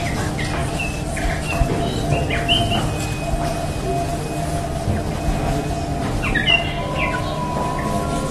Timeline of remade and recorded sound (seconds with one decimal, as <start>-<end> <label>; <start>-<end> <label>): 0.0-0.6 recorded; 0.6-1.3 remade; 1.3-5.9 recorded; 5.9-6.5 remade; 6.5-8.3 recorded